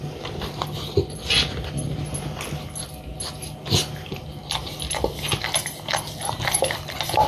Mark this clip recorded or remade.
recorded